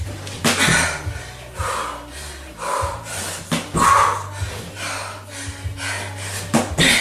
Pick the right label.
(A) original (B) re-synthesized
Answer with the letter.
A